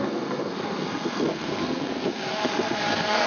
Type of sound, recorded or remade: remade